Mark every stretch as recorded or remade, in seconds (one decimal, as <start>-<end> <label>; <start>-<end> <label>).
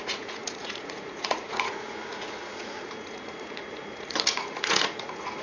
0.0-5.4 remade